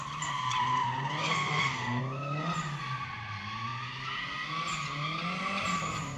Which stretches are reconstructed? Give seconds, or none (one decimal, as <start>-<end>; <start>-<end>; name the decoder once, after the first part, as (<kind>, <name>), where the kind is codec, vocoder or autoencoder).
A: 1.2-2.0 (codec, SNAC)